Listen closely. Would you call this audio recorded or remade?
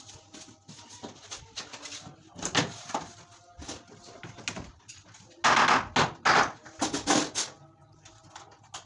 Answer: recorded